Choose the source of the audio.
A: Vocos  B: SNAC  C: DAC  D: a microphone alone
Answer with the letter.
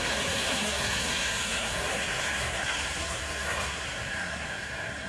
B